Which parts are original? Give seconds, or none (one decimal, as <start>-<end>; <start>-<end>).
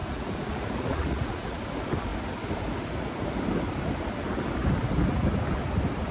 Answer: 1.6-6.1